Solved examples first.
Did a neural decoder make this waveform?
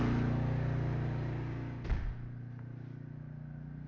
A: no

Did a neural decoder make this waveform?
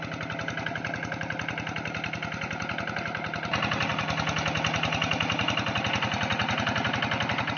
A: no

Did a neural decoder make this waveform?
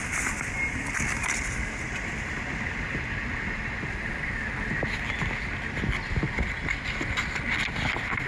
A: no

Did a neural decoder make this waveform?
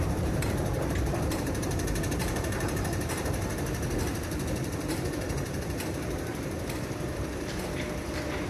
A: yes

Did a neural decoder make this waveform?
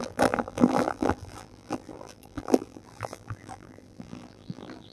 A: yes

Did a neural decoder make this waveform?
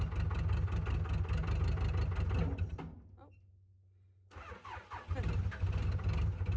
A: no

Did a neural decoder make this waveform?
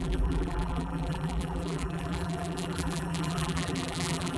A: yes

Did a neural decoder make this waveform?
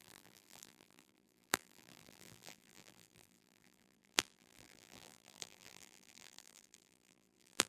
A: yes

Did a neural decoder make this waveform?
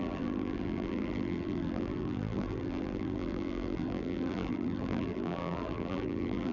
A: yes